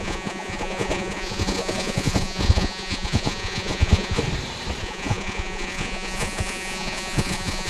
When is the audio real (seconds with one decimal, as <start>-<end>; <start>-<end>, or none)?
4.2-4.8